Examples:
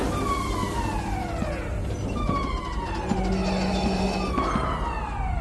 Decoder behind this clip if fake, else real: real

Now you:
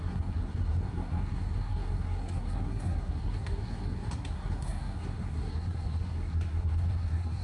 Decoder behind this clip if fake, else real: fake, codec, SNAC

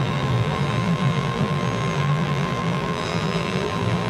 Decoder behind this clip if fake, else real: fake, vocoder, BigVGAN v2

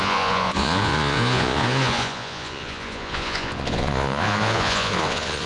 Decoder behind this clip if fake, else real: fake, vocoder, Vocos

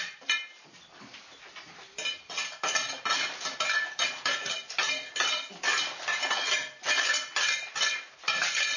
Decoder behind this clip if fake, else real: real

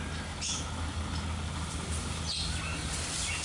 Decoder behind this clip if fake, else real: real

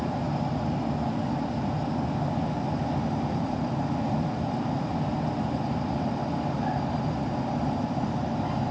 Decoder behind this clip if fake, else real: real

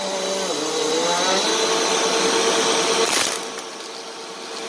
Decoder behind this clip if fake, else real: real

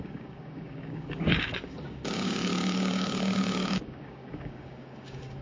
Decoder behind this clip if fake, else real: fake, codec, DAC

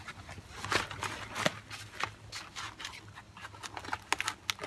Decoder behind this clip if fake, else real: real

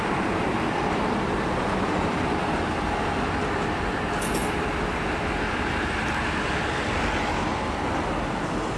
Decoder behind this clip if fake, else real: fake, vocoder, BigVGAN v2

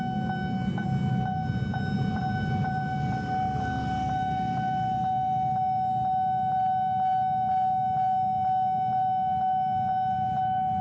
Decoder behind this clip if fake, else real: real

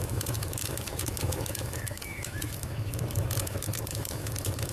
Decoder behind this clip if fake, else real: fake, autoencoder, DAC-VAE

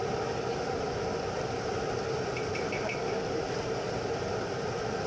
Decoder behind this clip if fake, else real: real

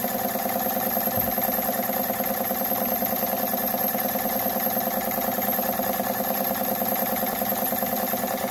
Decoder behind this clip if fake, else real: real